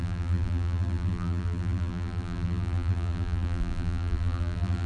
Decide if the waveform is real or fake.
fake